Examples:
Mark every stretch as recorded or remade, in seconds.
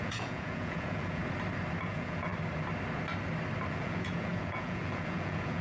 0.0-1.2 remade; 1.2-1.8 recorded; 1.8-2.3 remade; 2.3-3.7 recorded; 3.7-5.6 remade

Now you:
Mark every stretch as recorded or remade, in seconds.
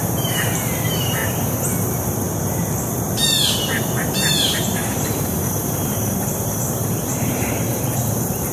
0.0-1.2 remade; 1.2-4.1 recorded; 4.1-8.5 remade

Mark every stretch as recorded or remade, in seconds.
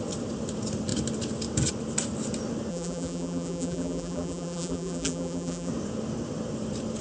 0.0-2.7 recorded; 2.7-5.7 remade; 5.7-7.0 recorded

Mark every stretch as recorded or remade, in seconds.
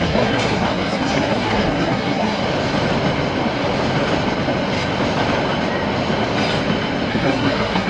0.0-2.4 remade; 2.4-7.1 recorded; 7.1-7.9 remade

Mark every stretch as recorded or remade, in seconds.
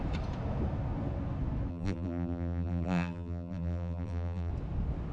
0.0-1.7 recorded; 1.7-4.5 remade; 4.5-5.1 recorded